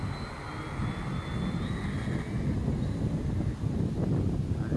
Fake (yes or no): no